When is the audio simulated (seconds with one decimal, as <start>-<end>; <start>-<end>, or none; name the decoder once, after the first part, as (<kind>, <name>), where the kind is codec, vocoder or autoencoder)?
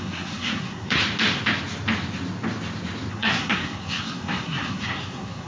0.0-1.0 (codec, SNAC); 3.1-5.5